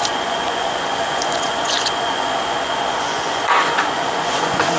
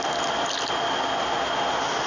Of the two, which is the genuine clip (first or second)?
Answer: second